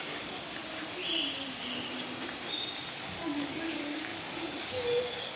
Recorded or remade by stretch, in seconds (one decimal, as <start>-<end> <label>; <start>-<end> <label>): 0.0-0.6 remade; 0.6-2.9 recorded; 2.9-5.4 remade